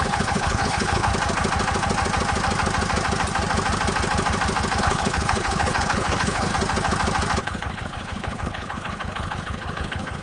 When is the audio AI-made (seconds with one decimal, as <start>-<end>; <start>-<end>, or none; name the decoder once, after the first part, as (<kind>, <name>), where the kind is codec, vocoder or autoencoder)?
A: 0.0-1.1 (codec, HILCodec); 4.8-6.5; 7.4-10.2